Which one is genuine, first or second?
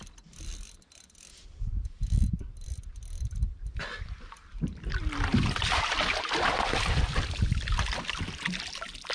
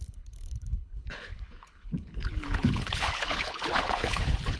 first